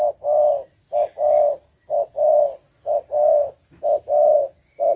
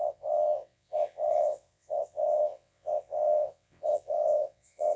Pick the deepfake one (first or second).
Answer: second